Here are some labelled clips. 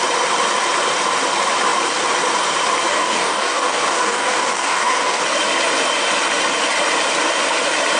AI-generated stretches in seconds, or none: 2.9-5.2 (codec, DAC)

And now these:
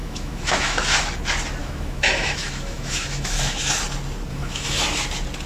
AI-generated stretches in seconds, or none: 0.0-1.0 (autoencoder, DAC-VAE); 1.6-3.7; 4.3-4.8

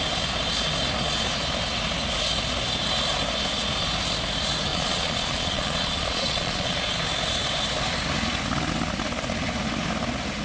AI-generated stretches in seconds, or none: 4.7-7.0 (vocoder, Vocos)